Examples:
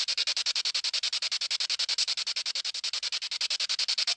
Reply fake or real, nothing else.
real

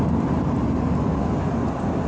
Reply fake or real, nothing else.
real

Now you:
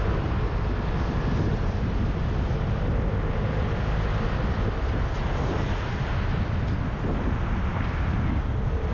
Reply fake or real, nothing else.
real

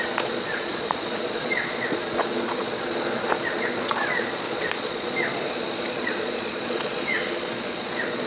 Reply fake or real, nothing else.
fake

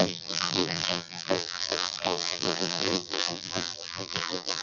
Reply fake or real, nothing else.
fake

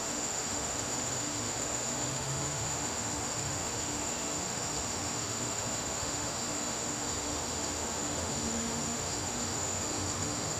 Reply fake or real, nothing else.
fake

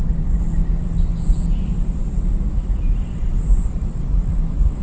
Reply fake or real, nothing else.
real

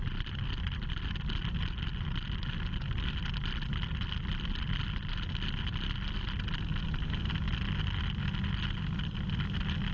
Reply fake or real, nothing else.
real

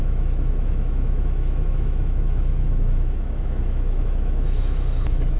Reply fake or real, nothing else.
fake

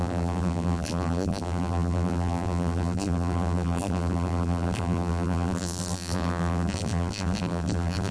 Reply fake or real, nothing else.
fake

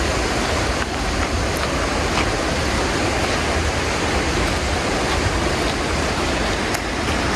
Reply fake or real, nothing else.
real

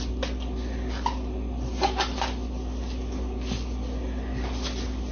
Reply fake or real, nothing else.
real